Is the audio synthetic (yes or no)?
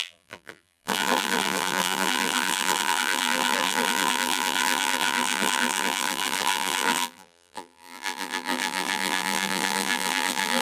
yes